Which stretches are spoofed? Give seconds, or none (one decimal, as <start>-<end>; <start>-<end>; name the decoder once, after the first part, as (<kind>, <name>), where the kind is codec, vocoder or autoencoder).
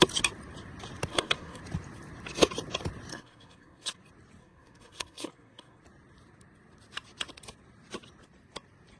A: 1.1-1.6 (codec, SNAC); 3.1-4.0; 4.4-5.8